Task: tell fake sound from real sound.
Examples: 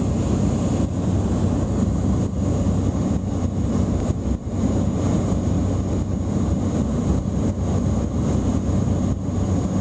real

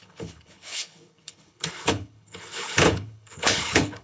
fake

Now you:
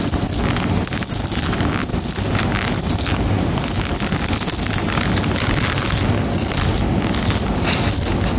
real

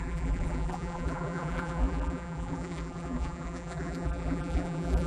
fake